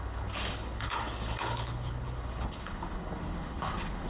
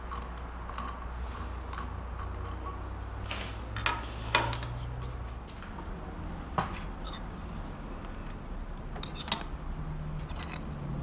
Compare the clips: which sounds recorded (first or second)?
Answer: second